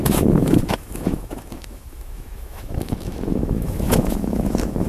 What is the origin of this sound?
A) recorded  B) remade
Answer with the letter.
B